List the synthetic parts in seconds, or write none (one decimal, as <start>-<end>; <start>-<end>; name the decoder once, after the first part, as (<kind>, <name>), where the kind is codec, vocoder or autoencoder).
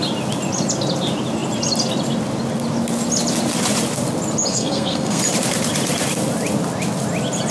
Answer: 4.5-5.2 (codec, SNAC)